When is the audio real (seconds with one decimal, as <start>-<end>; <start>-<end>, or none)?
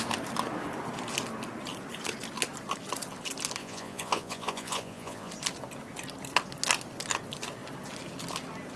0.0-3.6; 5.3-8.8